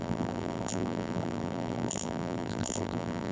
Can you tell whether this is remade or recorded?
remade